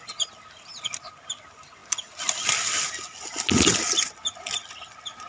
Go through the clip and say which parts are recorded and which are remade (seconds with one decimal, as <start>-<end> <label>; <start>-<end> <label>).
0.0-5.3 recorded